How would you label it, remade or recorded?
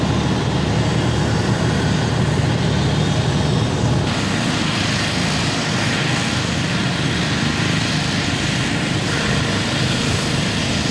recorded